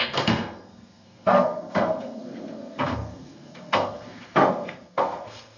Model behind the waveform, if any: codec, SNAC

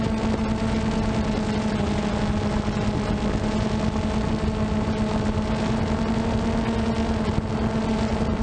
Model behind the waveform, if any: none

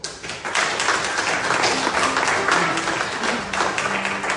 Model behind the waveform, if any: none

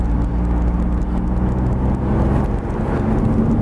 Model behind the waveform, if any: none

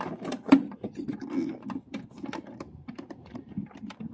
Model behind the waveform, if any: none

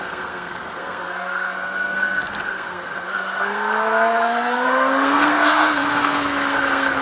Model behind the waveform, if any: codec, SNAC